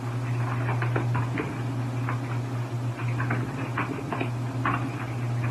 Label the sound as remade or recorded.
recorded